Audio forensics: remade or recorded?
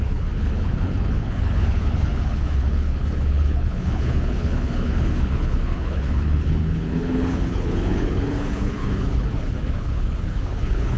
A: remade